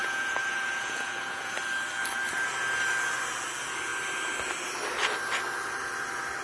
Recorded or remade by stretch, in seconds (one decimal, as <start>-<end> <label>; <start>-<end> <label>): 0.0-1.5 remade; 1.5-6.4 recorded